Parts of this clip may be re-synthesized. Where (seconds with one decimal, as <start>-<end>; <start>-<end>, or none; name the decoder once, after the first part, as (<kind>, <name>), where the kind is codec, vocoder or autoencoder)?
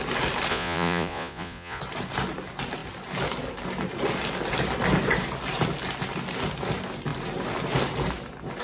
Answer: 0.5-1.8 (vocoder, Vocos)